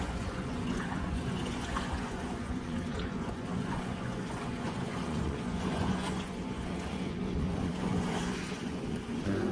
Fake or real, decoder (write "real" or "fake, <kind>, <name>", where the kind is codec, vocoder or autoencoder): fake, vocoder, Vocos